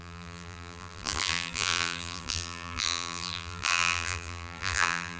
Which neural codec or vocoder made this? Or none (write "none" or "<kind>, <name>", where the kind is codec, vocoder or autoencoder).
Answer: vocoder, BigVGAN v2